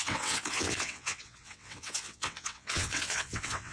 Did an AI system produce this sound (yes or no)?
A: yes